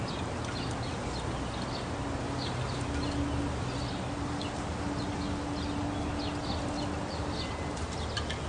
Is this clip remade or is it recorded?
recorded